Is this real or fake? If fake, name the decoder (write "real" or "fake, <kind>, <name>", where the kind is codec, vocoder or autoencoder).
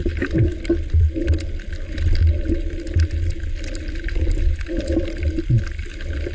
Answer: real